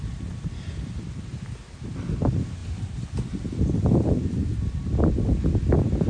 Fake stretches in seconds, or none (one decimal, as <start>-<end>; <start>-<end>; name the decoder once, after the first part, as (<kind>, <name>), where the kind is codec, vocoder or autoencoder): none